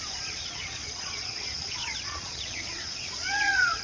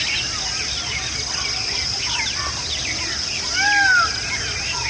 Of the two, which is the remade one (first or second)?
first